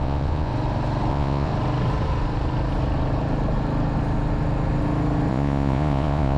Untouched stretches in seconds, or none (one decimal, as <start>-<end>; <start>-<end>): 0.5-1.1; 1.5-5.3